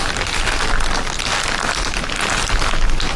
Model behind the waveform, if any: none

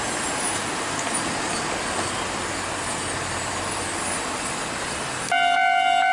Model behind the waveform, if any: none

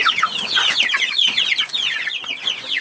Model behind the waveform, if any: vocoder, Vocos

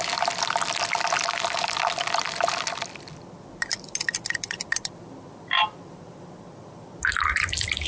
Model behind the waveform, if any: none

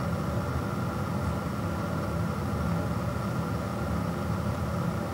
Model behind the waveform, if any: none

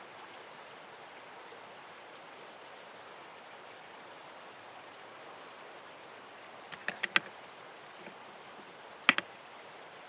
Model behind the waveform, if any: none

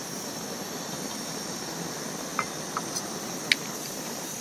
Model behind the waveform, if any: none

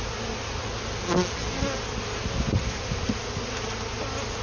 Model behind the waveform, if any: none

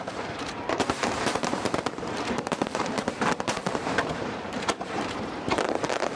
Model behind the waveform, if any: vocoder, BigVGAN v2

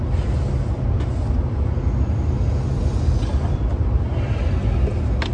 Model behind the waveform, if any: none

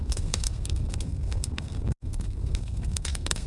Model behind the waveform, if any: codec, SNAC